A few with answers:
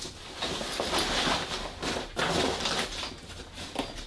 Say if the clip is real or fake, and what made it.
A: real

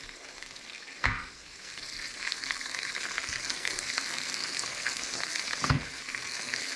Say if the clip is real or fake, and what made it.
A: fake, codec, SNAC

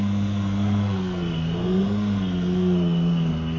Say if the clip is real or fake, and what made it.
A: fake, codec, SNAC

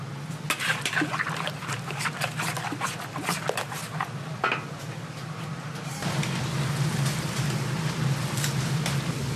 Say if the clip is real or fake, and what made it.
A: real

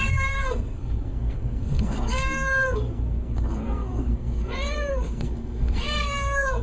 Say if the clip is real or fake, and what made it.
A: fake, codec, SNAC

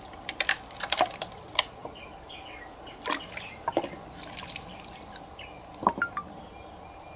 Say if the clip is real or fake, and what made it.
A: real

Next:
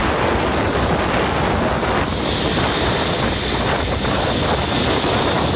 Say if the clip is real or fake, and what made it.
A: real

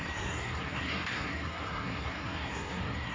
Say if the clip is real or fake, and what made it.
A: fake, codec, SNAC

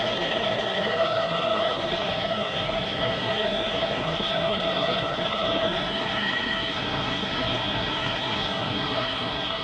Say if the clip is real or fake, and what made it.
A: fake, codec, SNAC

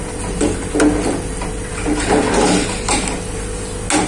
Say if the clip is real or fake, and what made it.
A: real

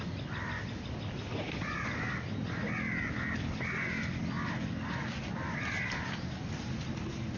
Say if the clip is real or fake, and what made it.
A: real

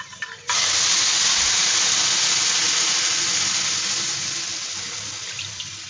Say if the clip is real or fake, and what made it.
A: real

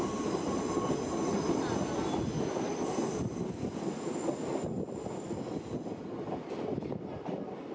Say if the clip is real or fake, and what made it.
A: real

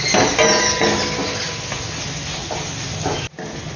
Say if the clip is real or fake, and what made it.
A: real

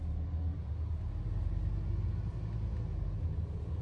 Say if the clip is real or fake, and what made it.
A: real